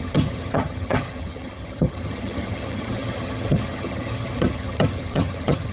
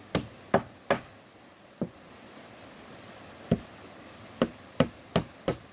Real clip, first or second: second